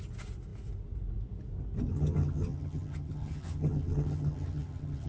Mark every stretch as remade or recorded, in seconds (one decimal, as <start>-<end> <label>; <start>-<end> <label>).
0.0-1.9 recorded; 1.9-5.1 remade